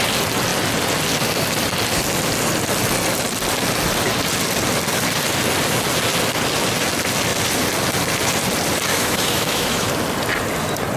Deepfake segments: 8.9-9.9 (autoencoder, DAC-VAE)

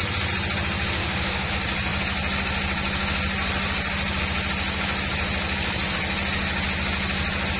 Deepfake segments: 1.0-1.5 (codec, DAC)

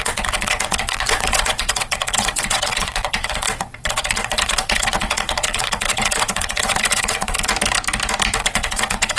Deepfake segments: 0.0-7.5 (vocoder, WaveNeXt); 8.4-9.2

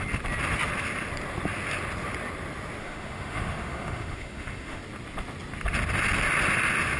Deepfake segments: 2.8-4.8 (autoencoder, DAC-VAE)

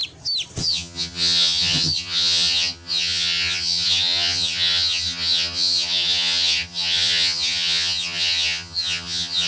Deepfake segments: 0.6-9.5 (vocoder, HiFi-GAN)

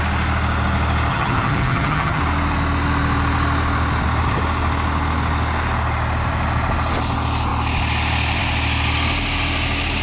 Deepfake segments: 1.1-2.2 (vocoder, HiFi-GAN)